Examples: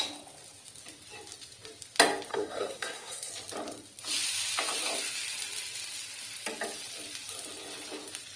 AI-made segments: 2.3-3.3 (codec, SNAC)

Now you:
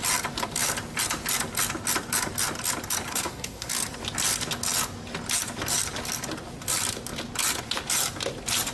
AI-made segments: 3.1-3.7 (codec, SNAC)

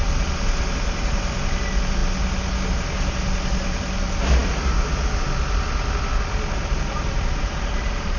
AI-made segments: none

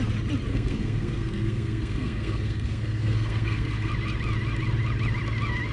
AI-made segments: 0.5-3.9 (codec, SNAC)

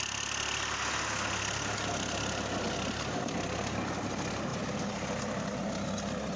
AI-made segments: none

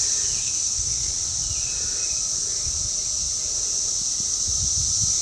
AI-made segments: 0.4-1.1 (codec, SNAC)

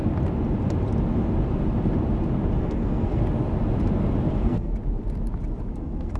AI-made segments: 2.6-3.2 (codec, SNAC); 4.3-4.7; 5.7-6.2